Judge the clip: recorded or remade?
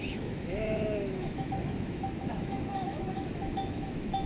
remade